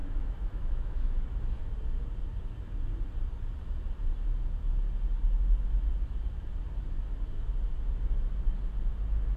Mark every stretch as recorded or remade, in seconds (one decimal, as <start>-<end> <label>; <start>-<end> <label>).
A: 0.0-1.6 remade; 1.6-9.4 recorded